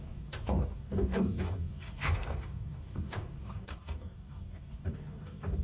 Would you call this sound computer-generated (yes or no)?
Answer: yes